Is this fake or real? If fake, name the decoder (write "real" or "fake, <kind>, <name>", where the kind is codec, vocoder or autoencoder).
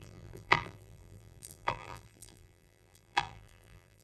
fake, vocoder, BigVGAN v2